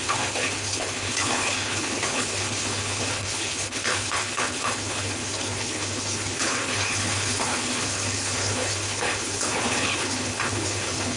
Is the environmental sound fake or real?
fake